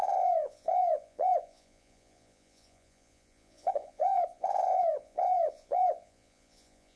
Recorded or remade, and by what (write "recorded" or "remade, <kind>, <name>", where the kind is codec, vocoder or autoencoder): remade, vocoder, Vocos